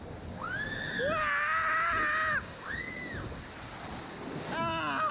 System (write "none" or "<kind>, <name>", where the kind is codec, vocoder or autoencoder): none